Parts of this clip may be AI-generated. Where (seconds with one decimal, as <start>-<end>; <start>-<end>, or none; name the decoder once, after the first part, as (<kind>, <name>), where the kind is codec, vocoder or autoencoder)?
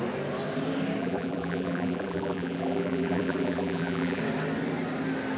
1.0-4.2 (vocoder, BigVGAN v2)